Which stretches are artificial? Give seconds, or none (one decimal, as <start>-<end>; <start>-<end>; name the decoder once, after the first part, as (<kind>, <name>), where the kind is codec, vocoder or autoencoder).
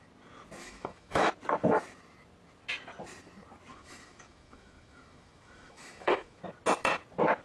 0.6-1.3 (autoencoder, DAC-VAE); 3.7-6.4